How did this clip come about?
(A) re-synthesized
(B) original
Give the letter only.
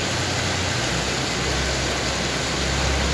B